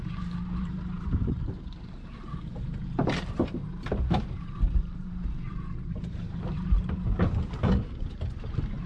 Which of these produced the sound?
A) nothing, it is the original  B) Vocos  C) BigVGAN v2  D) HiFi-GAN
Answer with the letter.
C